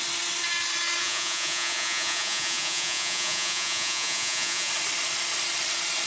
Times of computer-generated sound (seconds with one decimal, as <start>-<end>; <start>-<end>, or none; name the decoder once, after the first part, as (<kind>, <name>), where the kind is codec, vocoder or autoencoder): 1.0-4.7 (vocoder, Vocos)